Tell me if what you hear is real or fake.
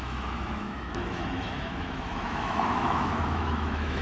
fake